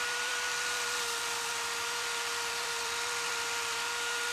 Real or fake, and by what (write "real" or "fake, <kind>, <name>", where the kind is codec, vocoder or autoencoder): fake, vocoder, BigVGAN v2